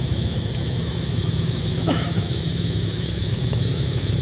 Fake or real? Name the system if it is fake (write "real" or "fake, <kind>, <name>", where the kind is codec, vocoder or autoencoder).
fake, autoencoder, DAC-VAE